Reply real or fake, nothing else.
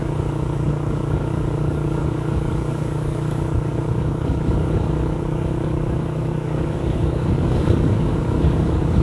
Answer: fake